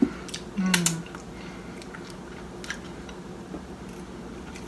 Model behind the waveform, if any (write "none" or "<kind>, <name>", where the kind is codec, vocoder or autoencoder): none